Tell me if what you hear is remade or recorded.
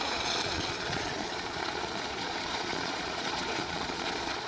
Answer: remade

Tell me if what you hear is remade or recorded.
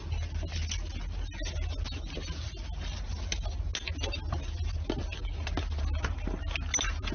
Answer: recorded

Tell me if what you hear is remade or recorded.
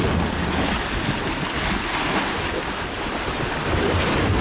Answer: recorded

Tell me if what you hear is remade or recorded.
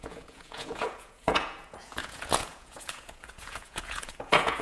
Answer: remade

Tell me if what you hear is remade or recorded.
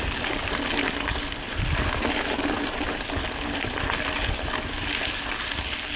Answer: recorded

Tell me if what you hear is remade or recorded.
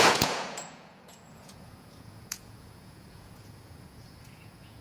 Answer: remade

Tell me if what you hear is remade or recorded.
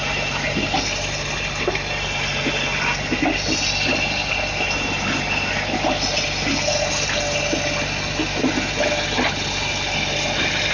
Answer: recorded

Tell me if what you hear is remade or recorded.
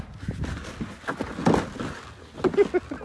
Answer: recorded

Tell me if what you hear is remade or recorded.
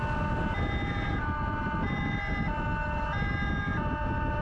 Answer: recorded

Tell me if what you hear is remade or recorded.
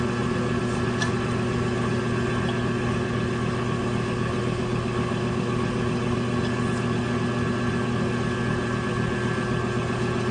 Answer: recorded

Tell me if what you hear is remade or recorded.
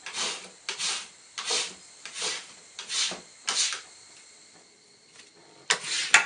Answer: recorded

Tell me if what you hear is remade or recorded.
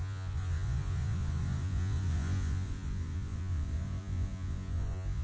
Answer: remade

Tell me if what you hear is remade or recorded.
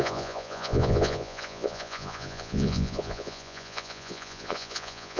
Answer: remade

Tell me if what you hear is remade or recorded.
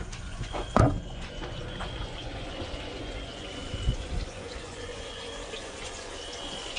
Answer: remade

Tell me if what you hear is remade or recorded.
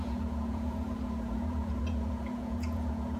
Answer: remade